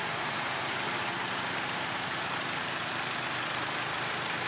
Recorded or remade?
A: remade